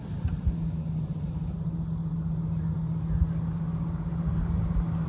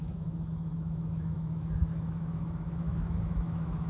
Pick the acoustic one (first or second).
first